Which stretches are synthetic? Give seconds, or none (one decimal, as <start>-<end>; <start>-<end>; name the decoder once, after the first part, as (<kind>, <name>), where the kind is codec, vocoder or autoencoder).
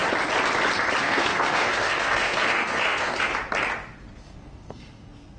1.0-3.3 (codec, SNAC); 4.2-5.4